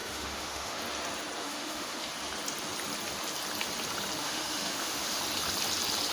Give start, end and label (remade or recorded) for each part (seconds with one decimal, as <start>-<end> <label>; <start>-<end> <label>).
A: 0.0-0.8 remade; 0.8-1.4 recorded; 1.4-2.1 remade; 2.1-4.2 recorded; 4.2-5.2 remade; 5.2-6.1 recorded